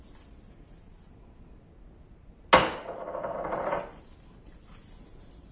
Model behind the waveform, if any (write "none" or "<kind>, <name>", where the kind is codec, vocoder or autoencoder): none